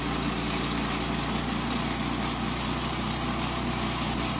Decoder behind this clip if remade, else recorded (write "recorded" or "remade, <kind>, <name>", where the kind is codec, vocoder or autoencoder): recorded